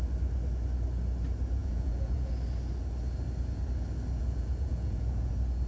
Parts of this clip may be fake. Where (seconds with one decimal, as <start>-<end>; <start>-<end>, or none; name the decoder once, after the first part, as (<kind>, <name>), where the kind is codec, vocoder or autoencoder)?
1.6-2.3 (vocoder, Vocos); 4.2-5.3